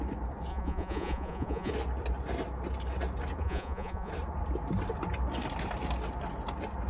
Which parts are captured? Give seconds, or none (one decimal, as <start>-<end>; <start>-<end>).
0.0-0.5; 1.7-3.4; 4.1-6.9